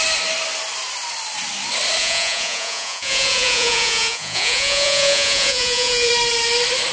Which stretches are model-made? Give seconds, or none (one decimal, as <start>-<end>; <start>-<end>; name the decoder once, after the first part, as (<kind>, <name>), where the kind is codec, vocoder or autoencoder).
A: 2.0-6.1 (vocoder, Vocos)